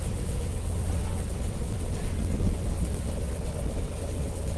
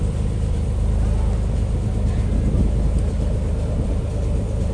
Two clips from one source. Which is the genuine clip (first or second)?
second